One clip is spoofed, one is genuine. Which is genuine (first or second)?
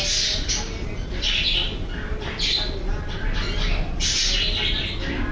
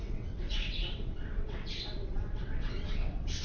first